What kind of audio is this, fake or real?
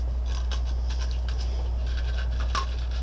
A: real